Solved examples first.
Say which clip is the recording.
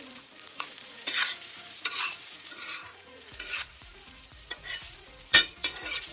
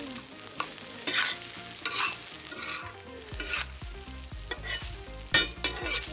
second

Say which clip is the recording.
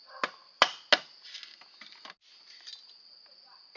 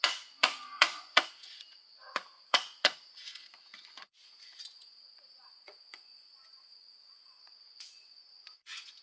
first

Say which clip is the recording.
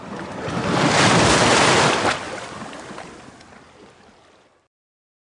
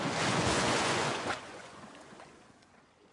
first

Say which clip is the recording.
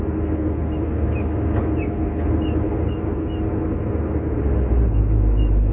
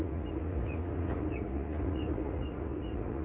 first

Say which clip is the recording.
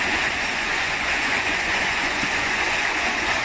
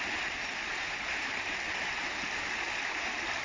second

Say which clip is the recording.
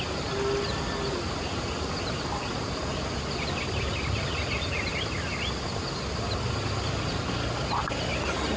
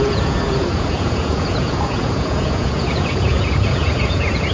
first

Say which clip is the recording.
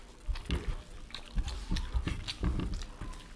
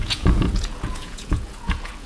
first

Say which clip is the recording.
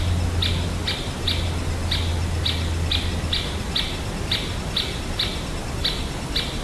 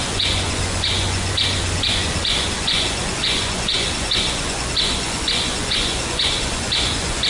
first